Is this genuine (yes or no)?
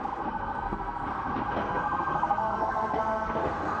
no